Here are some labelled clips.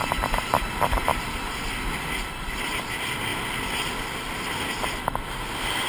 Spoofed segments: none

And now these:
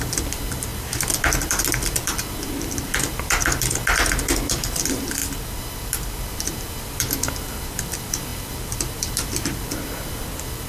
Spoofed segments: 0.0-10.7 (vocoder, BigVGAN v2)

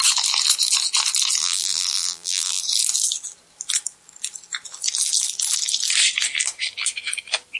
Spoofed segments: 1.4-2.6 (vocoder, BigVGAN v2)

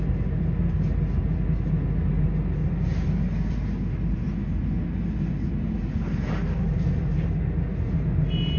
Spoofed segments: none

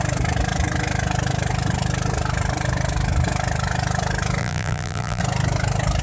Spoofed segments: 4.4-5.2 (vocoder, BigVGAN v2)

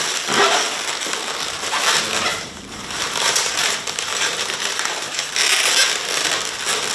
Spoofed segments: 2.3-5.4 (vocoder, BigVGAN v2)